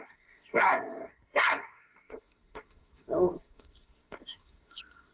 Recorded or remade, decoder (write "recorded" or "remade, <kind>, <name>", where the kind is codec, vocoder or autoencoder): remade, codec, SNAC